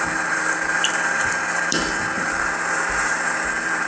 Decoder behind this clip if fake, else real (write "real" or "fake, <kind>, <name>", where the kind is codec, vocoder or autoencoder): fake, vocoder, BigVGAN v2